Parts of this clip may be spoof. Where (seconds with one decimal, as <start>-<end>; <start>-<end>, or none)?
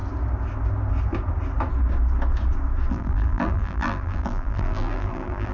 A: 2.9-5.5